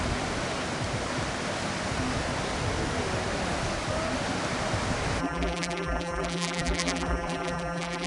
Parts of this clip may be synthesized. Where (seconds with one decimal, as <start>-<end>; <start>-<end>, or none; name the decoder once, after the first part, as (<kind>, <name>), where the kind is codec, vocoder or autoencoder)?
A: 5.2-8.1 (vocoder, BigVGAN v2)